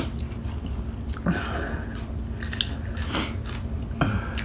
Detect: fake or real real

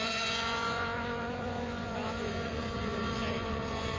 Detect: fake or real fake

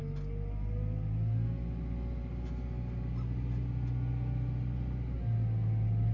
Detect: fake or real real